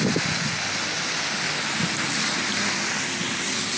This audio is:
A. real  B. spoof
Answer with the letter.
A